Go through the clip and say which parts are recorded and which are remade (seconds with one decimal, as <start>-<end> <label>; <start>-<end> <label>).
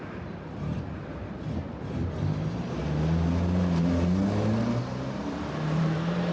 0.0-2.8 remade; 2.8-4.6 recorded; 4.6-6.3 remade